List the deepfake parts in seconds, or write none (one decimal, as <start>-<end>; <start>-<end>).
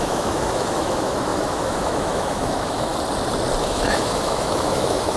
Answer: 0.0-2.9; 3.6-5.2